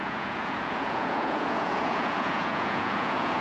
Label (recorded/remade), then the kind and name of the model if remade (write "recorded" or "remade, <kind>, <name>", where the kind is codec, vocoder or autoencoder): remade, vocoder, Vocos